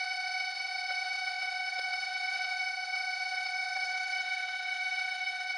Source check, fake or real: fake